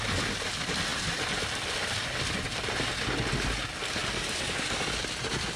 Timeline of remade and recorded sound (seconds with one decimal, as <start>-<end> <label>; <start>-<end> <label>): 0.0-4.0 recorded; 4.0-4.8 remade; 4.8-5.6 recorded